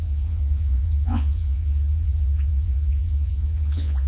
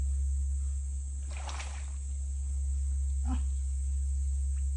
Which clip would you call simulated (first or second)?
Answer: first